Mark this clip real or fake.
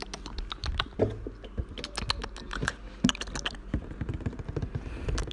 real